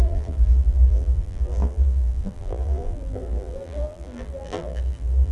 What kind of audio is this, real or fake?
fake